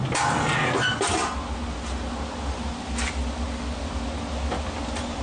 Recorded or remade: recorded